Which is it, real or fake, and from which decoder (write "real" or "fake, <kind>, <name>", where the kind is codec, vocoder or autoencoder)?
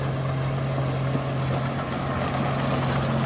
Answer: real